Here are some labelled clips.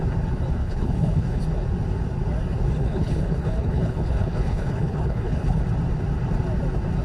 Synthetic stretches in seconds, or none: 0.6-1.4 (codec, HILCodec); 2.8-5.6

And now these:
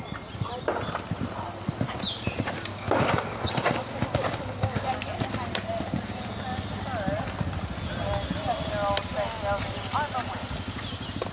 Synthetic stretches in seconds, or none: 2.7-4.9 (codec, DAC)

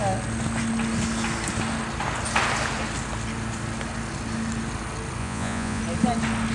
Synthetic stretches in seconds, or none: 5.2-5.8 (vocoder, Vocos)

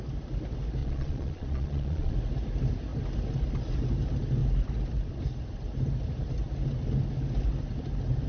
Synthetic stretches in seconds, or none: 0.8-2.1 (vocoder, Vocos)

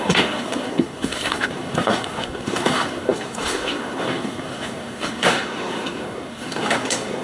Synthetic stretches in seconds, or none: 0.0-7.2 (codec, SNAC)

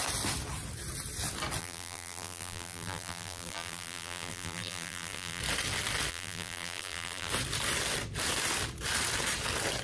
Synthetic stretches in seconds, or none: 1.6-5.4 (vocoder, BigVGAN v2); 6.1-7.3

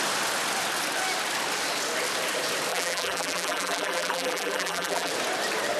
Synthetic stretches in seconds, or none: 2.7-5.1 (vocoder, BigVGAN v2)